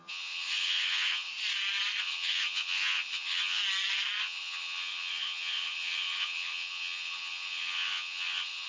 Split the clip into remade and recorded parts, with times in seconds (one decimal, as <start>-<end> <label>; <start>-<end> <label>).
0.0-1.3 remade; 1.3-2.0 recorded; 2.0-3.6 remade; 3.6-4.2 recorded; 4.2-8.7 remade